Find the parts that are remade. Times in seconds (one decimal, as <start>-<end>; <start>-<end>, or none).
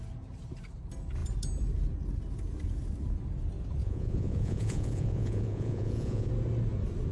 3.8-6.3